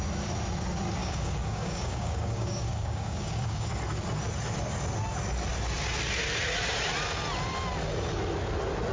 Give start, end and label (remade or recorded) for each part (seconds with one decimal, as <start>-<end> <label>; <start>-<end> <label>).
0.0-1.0 recorded; 1.0-3.7 remade; 3.7-8.9 recorded